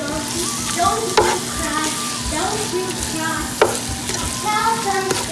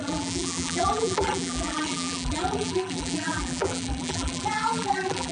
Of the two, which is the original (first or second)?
first